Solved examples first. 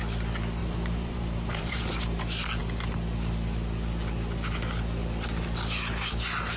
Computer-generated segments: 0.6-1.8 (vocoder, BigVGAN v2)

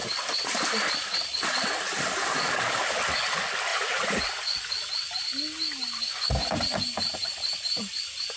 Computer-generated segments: 3.7-4.9 (vocoder, Vocos)

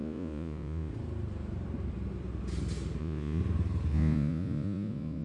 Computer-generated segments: 0.0-0.9 (vocoder, Vocos); 3.0-3.4; 3.9-5.2

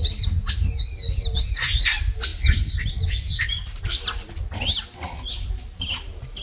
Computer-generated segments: none

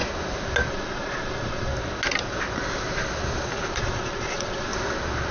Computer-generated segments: 0.7-1.7 (vocoder, Vocos); 3.7-4.7